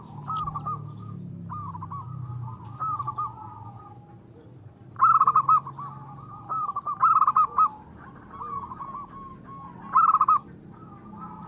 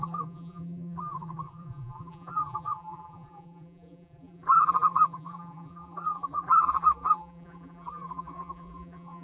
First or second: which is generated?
second